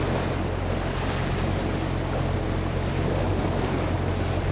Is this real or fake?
real